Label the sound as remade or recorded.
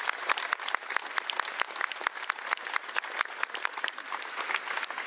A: recorded